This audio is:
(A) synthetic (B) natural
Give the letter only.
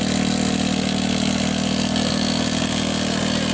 B